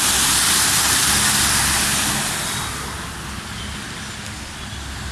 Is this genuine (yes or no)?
yes